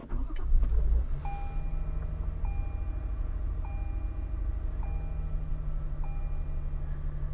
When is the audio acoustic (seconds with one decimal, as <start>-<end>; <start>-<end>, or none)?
0.0-7.3